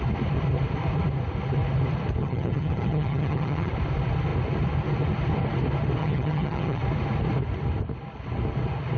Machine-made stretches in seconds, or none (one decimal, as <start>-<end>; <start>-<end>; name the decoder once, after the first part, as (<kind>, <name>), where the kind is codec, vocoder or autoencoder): 2.2-3.7 (vocoder, HiFi-GAN); 6.0-6.8